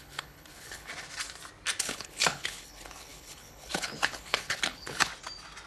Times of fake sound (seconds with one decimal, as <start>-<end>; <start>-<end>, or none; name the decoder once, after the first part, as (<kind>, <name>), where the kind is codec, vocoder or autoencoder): 0.0-0.9 (codec, HILCodec); 1.8-5.1